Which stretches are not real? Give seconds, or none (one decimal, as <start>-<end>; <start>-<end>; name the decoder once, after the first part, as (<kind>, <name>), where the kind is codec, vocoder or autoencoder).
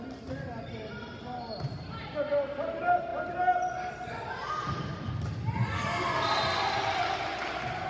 none